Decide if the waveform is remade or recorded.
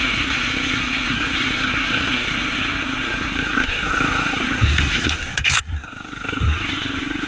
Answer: remade